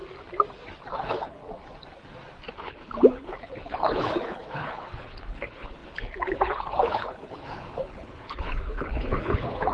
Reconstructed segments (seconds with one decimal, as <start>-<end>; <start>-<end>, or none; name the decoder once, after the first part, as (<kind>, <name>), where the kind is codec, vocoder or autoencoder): 0.9-1.4 (codec, HILCodec); 2.5-9.7